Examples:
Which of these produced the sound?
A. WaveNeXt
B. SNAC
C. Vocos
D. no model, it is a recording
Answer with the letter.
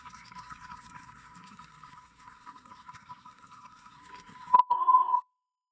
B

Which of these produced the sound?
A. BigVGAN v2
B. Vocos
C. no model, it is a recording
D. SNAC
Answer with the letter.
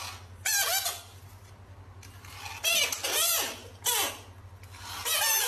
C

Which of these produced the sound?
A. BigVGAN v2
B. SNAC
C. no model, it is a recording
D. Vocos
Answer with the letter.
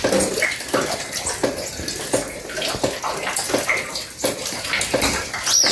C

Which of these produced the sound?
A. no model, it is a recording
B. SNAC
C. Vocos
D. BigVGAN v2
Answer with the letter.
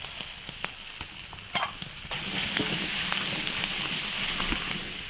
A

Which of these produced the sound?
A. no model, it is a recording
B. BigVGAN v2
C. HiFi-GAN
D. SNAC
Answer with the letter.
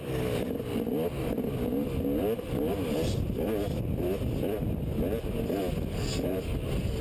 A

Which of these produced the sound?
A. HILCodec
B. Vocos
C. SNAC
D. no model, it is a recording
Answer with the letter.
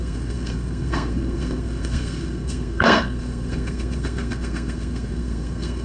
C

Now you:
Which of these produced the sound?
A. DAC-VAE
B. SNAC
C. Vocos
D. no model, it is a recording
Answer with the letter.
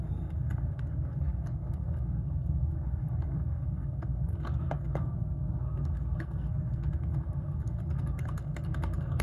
B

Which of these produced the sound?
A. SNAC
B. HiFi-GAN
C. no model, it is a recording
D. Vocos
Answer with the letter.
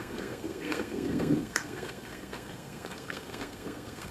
A